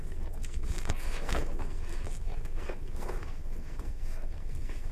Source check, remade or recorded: remade